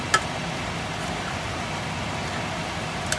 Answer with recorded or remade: recorded